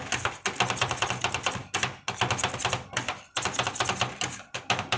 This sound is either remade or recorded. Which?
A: recorded